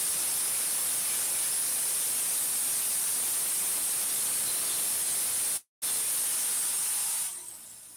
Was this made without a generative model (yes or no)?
yes